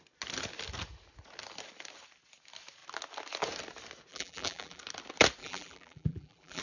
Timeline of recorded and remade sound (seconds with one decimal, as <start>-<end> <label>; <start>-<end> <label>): 0.0-4.1 recorded; 4.1-4.8 remade; 4.8-5.4 recorded; 5.4-6.6 remade